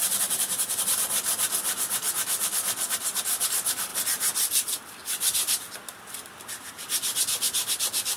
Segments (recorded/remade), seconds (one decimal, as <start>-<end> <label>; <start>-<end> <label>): 0.0-0.8 remade; 0.8-2.0 recorded; 2.0-2.9 remade; 2.9-3.9 recorded; 3.9-6.0 remade; 6.0-8.2 recorded

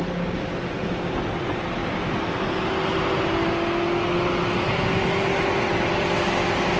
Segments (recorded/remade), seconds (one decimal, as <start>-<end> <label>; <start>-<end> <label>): 0.0-6.8 recorded

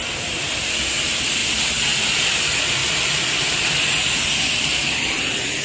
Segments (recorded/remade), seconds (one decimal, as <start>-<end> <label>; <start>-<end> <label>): 0.0-5.6 recorded

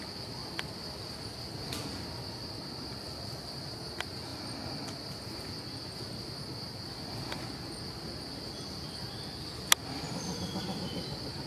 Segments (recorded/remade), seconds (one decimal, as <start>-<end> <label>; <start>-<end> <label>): 0.0-11.5 recorded

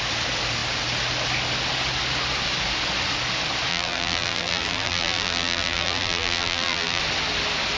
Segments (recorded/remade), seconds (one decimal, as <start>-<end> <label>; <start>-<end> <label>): 0.0-3.7 recorded; 3.7-7.0 remade; 7.0-7.8 recorded

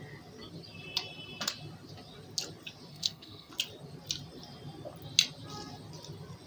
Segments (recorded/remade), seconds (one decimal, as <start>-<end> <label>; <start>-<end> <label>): 0.0-2.9 recorded; 2.9-3.5 remade; 3.5-6.5 recorded